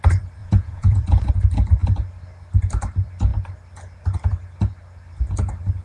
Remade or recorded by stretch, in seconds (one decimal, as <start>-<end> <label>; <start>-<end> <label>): 0.0-0.4 recorded; 0.4-1.3 remade; 1.3-5.8 recorded